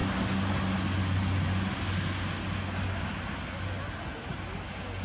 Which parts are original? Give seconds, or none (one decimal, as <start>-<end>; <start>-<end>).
0.0-5.0